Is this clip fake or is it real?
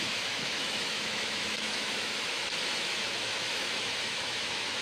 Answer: fake